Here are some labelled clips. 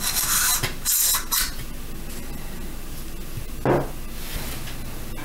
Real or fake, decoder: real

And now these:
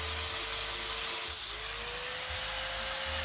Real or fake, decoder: real